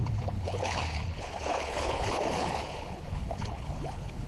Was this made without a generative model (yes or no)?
no